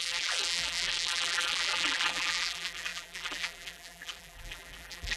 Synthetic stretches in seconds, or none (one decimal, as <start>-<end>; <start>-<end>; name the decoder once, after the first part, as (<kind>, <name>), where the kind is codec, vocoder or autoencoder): 0.0-5.2 (vocoder, BigVGAN v2)